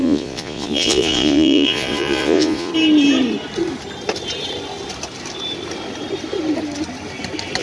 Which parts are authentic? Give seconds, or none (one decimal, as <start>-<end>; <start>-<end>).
2.7-7.6